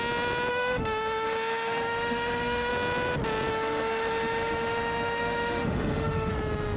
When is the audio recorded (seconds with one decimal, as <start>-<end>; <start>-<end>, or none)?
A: 0.0-0.5; 2.7-3.5; 6.3-6.8